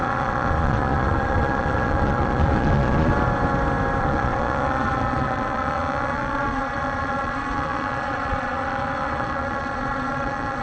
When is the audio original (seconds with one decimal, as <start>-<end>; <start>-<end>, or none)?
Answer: 3.1-4.0

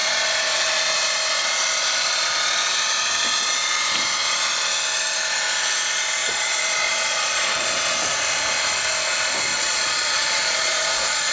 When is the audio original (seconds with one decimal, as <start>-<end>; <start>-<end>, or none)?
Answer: 0.0-6.2; 7.8-9.5

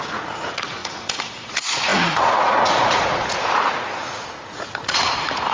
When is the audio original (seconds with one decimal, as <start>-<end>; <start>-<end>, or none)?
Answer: none

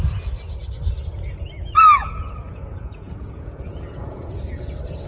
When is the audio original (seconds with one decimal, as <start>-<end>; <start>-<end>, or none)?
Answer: 0.0-2.0; 4.3-5.1